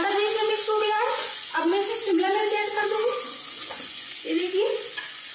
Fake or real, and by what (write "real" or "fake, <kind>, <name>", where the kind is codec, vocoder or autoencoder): fake, vocoder, Vocos